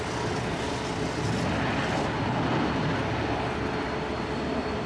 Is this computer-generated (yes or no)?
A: no